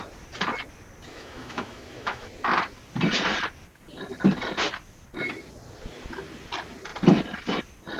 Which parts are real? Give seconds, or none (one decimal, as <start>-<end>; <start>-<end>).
0.0-1.1; 2.3-8.0